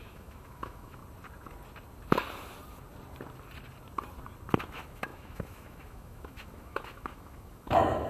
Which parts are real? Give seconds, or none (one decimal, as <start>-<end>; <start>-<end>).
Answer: 1.0-4.6